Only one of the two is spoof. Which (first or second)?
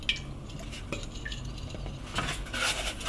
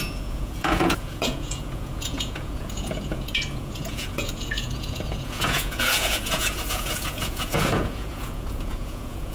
second